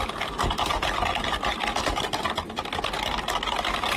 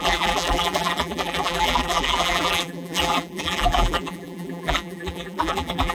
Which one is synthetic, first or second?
second